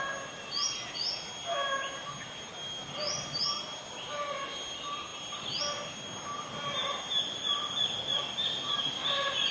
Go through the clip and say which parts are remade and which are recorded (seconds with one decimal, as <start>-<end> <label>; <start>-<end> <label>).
0.0-9.5 recorded